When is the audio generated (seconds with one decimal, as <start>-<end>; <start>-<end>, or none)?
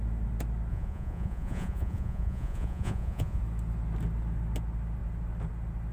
0.7-3.4